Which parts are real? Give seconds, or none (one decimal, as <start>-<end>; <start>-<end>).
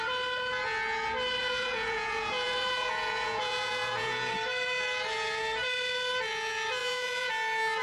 0.0-1.4; 4.3-6.8; 7.3-7.8